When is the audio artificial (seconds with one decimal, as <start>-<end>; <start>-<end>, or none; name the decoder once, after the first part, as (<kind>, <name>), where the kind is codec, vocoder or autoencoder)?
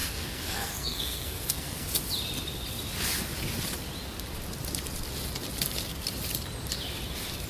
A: 0.0-1.9 (codec, SNAC)